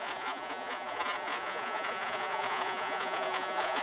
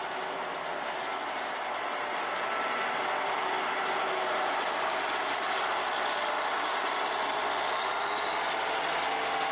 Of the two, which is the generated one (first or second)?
first